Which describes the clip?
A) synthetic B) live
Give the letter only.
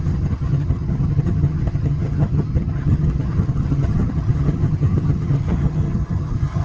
A